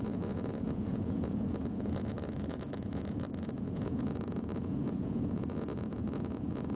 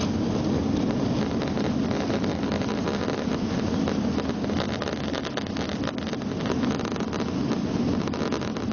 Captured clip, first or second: second